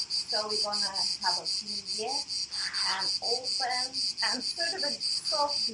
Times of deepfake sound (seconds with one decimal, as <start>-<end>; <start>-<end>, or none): 0.0-1.1; 4.5-5.7